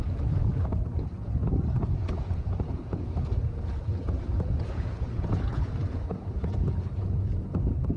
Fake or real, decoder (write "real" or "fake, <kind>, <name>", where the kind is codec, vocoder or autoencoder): fake, vocoder, Vocos